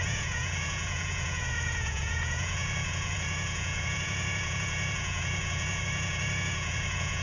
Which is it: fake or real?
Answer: fake